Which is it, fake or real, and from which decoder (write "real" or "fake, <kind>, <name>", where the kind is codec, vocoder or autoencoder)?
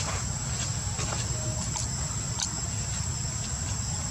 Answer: fake, vocoder, BigVGAN v2